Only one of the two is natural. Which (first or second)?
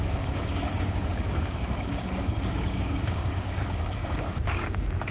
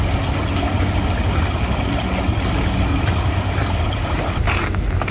second